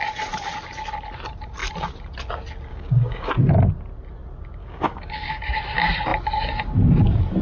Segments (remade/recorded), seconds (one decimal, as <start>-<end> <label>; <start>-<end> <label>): 0.0-2.7 recorded; 2.7-3.3 remade; 3.3-4.6 recorded; 4.6-5.4 remade; 5.4-7.4 recorded